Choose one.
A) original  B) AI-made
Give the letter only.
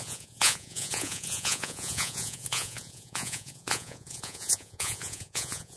B